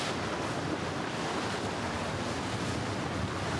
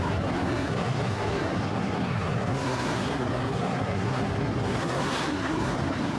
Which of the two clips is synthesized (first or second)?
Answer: second